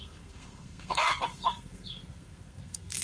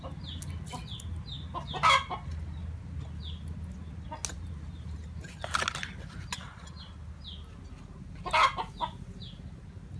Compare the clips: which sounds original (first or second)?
second